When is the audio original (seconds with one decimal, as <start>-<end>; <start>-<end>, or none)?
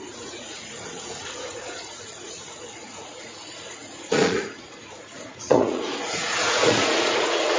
none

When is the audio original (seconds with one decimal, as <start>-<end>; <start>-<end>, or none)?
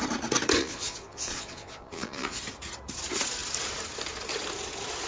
0.0-0.6; 2.4-5.1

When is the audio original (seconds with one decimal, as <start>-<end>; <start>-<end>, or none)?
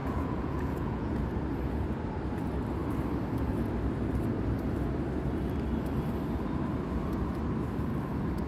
1.2-8.5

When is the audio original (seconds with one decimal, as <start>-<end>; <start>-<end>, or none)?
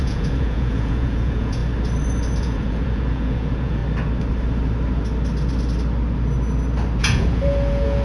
1.6-2.4; 3.8-7.0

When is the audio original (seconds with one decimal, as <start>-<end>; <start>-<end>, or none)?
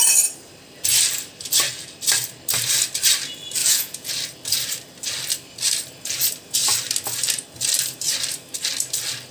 0.0-3.6; 4.1-9.3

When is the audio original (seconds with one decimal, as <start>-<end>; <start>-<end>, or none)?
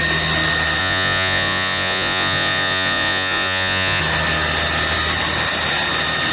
0.0-0.8; 4.0-6.3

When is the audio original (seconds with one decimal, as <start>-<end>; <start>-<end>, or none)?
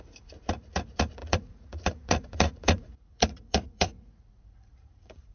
none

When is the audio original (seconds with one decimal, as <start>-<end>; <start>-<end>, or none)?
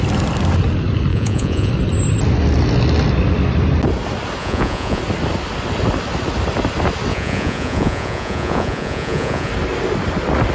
0.0-1.1; 1.7-4.4; 5.0-7.1; 9.5-10.5